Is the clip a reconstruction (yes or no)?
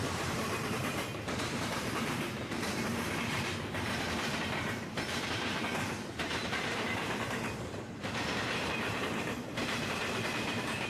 yes